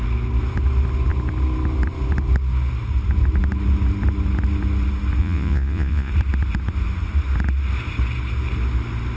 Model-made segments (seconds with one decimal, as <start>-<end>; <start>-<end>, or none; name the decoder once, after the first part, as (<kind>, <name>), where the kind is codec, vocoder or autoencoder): 5.2-6.1 (vocoder, Vocos)